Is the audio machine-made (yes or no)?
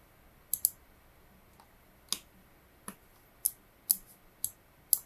no